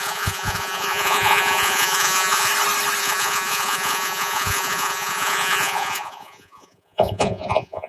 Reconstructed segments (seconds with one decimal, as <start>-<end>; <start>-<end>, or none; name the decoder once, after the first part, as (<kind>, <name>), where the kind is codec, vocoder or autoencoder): 0.0-2.5 (vocoder, Vocos); 3.0-7.9